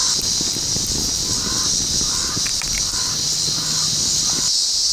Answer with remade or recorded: recorded